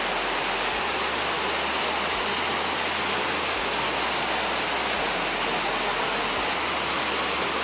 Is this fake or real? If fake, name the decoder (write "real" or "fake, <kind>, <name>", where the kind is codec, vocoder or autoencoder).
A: real